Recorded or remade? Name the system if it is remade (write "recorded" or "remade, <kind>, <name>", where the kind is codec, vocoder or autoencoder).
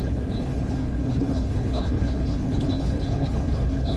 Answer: remade, codec, HILCodec